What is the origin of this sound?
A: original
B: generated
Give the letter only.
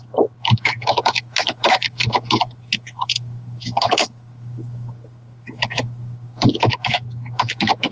B